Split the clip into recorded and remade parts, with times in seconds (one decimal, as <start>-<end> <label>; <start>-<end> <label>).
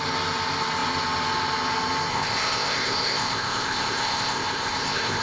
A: 0.0-2.1 recorded; 2.1-5.2 remade